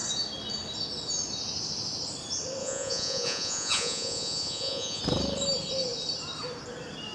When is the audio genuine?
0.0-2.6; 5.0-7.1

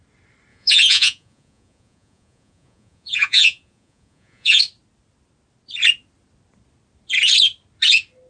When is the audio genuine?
0.0-0.5; 4.6-8.3

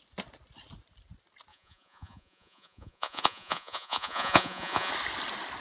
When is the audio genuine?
0.0-1.5; 4.9-5.6

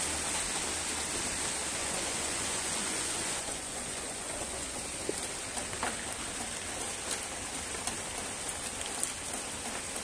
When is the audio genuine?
0.0-1.8; 4.8-10.0

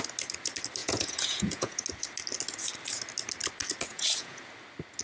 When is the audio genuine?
0.0-0.8; 1.8-3.9; 4.4-5.0

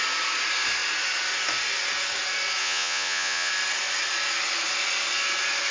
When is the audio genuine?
0.0-2.6; 3.5-5.7